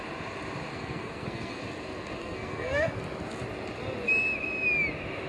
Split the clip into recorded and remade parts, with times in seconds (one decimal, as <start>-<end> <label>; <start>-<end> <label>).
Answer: 0.0-0.7 recorded; 0.7-1.6 remade; 1.6-2.2 recorded; 2.2-3.0 remade; 3.0-5.3 recorded